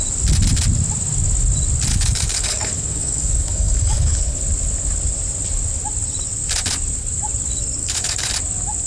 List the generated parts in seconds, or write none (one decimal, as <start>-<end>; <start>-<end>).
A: 1.9-4.2; 7.8-8.3